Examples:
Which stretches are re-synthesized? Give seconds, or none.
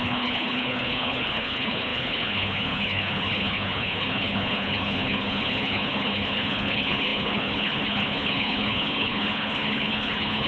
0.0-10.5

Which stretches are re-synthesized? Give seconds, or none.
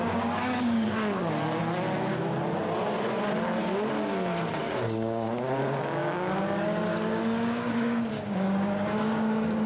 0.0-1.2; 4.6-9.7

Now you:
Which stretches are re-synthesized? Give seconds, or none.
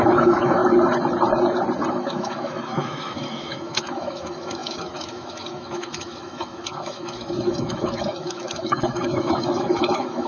0.0-0.6; 1.9-10.3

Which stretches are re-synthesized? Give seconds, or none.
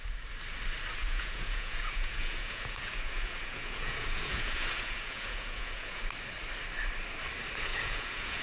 1.0-6.0; 7.7-8.4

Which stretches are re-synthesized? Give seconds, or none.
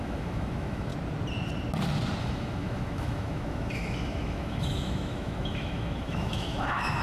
0.0-0.9; 2.2-7.0